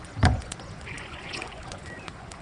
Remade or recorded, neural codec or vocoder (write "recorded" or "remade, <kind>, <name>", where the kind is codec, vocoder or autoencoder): remade, vocoder, Vocos